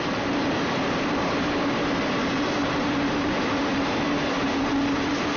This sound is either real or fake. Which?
fake